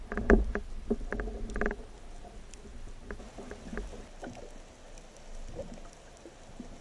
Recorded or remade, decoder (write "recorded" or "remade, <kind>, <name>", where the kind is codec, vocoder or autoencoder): recorded